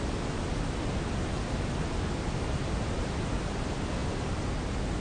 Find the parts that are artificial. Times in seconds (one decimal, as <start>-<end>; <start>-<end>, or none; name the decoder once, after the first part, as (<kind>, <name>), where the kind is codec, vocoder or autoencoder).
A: none